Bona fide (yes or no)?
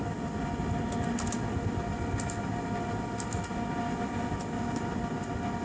yes